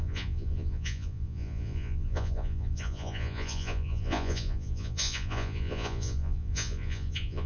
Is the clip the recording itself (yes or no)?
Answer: no